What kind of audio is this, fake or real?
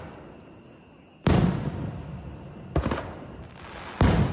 real